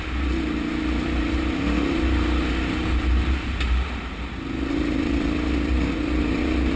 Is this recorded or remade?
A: recorded